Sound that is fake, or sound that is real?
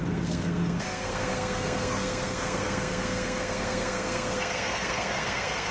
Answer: fake